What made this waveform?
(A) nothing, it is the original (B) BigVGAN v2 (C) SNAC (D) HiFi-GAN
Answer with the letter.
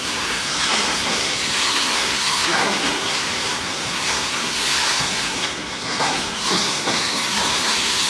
C